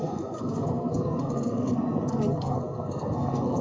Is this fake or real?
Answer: fake